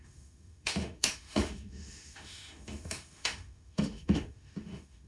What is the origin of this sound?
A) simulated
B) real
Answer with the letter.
A